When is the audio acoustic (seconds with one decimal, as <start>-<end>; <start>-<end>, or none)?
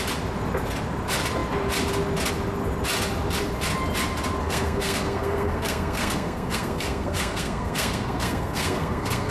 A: 0.0-4.4